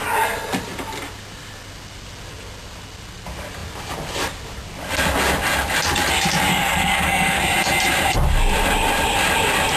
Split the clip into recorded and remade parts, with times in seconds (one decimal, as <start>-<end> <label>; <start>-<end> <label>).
0.0-6.5 recorded; 6.5-7.4 remade; 7.4-9.8 recorded